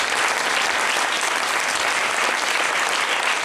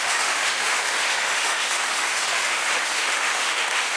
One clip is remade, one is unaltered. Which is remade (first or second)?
second